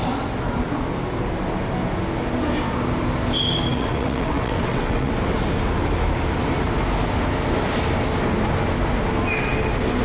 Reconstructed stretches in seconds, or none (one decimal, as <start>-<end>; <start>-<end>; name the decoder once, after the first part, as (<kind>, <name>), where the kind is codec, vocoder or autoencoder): 3.7-5.1 (vocoder, WaveNeXt)